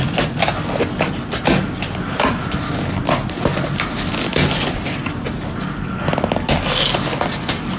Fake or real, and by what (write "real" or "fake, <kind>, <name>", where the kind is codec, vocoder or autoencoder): real